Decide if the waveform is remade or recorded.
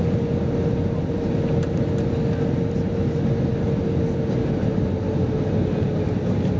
recorded